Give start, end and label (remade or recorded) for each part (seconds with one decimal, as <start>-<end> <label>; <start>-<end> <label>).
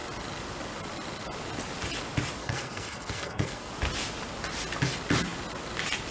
0.0-2.4 recorded; 2.4-3.7 remade; 3.7-6.1 recorded